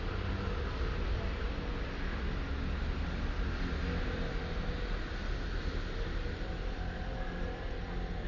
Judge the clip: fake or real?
real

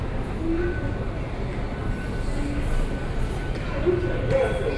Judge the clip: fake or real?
real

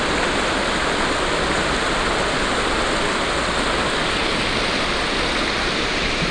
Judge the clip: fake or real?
real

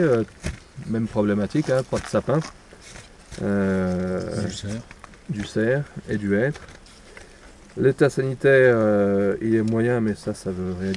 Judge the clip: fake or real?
real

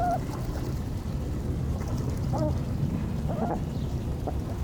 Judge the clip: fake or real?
real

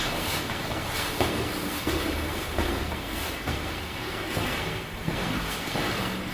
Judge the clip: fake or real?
fake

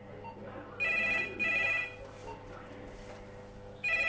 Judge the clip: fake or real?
real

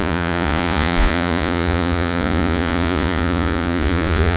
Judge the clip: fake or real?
fake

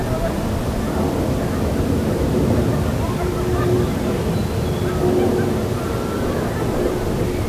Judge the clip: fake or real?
real